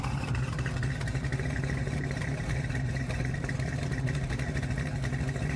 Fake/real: fake